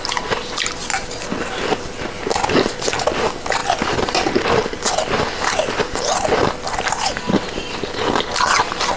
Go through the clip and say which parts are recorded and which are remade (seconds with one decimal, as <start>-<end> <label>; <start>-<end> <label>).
0.0-9.0 recorded